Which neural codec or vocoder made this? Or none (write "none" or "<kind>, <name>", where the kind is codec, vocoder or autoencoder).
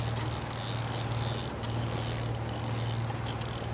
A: none